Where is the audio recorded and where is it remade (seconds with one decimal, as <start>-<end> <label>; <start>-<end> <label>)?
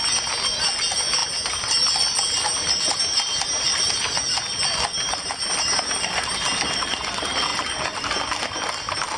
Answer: 0.0-9.2 recorded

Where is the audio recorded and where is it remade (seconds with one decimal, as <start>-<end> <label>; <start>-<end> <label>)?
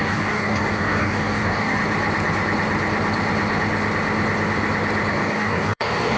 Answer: 0.0-1.8 remade; 1.8-5.1 recorded; 5.1-6.2 remade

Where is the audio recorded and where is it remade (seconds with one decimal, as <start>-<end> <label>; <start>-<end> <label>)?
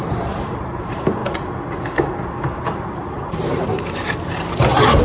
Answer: 0.0-1.2 remade; 1.2-2.4 recorded; 2.4-5.0 remade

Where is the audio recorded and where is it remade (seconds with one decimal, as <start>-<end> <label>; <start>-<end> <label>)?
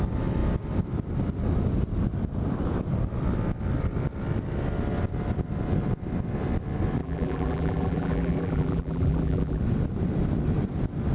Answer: 0.0-7.0 recorded; 7.0-9.6 remade; 9.6-11.1 recorded